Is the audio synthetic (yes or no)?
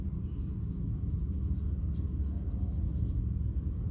no